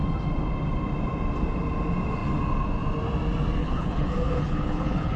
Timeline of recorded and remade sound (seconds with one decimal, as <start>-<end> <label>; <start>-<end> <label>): 0.0-3.6 recorded; 3.6-5.2 remade